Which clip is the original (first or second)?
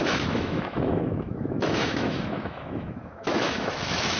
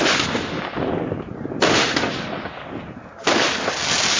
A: second